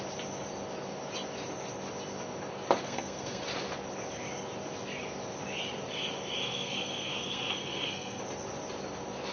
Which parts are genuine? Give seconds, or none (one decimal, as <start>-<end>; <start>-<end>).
0.0-2.8; 3.4-6.4; 8.2-9.3